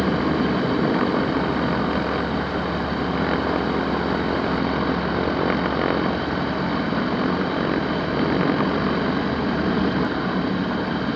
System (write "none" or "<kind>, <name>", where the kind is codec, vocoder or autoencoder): none